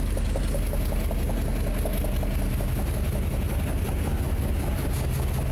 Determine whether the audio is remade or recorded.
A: recorded